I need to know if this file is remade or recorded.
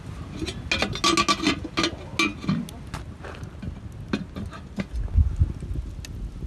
recorded